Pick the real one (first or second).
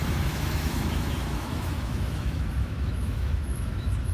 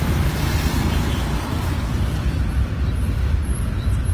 second